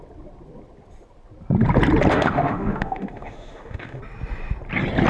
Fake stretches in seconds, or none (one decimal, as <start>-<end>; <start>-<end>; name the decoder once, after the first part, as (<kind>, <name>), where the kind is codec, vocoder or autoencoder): 2.1-4.0 (autoencoder, DAC-VAE)